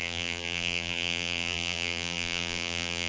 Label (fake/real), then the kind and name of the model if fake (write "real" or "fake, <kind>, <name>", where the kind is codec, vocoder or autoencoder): fake, vocoder, BigVGAN v2